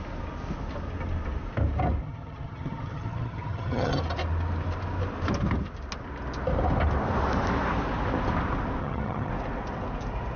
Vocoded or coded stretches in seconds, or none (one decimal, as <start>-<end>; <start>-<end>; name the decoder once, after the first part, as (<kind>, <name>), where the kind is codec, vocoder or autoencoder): 2.0-4.0 (vocoder, HiFi-GAN); 8.8-9.3